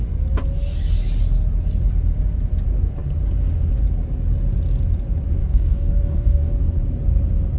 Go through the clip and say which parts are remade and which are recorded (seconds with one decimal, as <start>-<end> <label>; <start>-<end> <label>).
0.0-5.4 recorded; 5.4-6.5 remade; 6.5-7.6 recorded

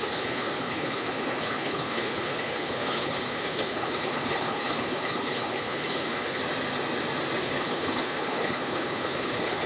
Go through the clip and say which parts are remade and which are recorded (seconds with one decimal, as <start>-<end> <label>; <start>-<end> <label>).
0.0-6.4 remade; 6.4-7.4 recorded; 7.4-9.7 remade